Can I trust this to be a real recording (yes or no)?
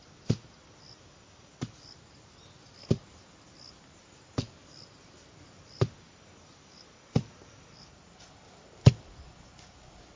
yes